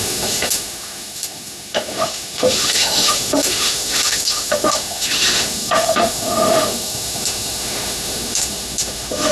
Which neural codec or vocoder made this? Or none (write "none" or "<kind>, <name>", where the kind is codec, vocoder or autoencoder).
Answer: autoencoder, DAC-VAE